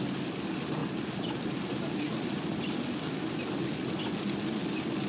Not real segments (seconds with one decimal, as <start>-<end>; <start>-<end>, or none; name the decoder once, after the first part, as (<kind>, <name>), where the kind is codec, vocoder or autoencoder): none